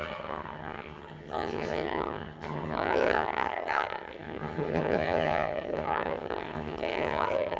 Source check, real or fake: fake